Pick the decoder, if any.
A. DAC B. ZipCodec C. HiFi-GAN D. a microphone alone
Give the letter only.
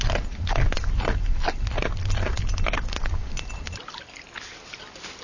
D